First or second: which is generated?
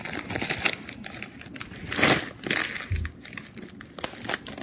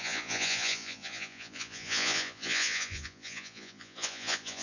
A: second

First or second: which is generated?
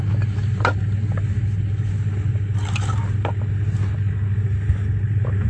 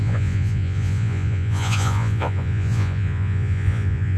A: second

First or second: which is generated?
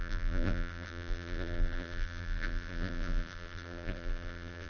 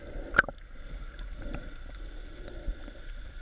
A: first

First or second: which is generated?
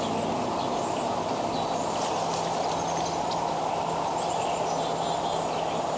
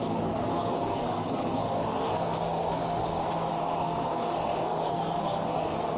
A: second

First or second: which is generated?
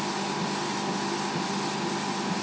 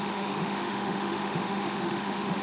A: second